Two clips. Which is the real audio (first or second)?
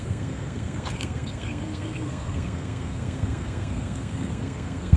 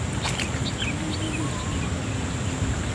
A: second